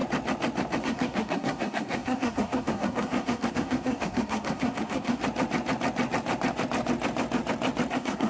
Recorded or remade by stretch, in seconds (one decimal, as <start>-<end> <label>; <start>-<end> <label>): 0.0-0.8 recorded; 0.8-5.2 remade; 5.2-7.9 recorded; 7.9-8.3 remade